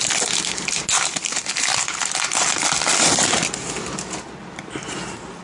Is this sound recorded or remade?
recorded